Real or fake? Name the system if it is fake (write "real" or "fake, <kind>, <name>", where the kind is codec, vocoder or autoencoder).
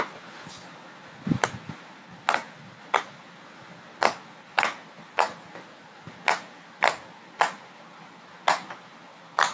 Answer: real